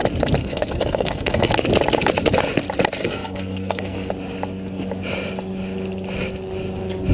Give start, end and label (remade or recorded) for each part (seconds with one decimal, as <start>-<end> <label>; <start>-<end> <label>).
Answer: 0.0-0.4 recorded; 0.4-1.5 remade; 1.5-3.0 recorded; 3.0-4.1 remade; 4.1-7.1 recorded